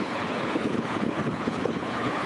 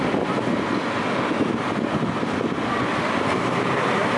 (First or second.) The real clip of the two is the second